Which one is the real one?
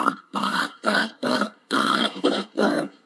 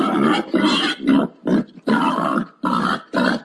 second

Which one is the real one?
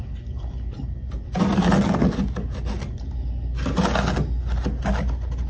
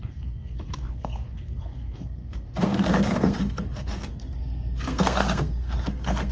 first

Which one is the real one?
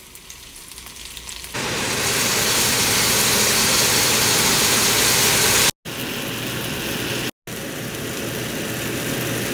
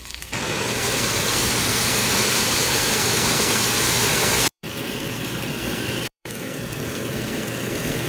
first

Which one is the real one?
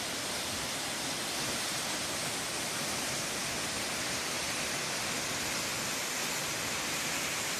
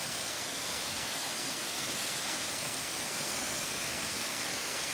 first